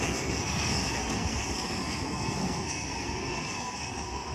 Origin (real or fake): fake